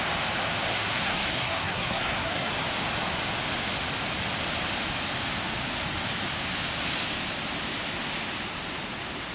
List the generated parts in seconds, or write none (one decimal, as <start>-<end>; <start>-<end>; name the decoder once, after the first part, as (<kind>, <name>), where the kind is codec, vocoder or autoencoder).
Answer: 0.7-2.5 (codec, SNAC)